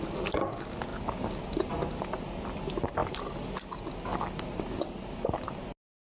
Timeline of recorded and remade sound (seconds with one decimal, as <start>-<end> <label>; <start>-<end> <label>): 0.0-6.0 recorded